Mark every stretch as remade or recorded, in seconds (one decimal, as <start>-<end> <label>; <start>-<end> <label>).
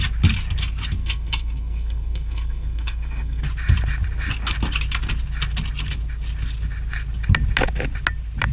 0.0-1.0 recorded; 1.0-3.4 remade; 3.4-8.5 recorded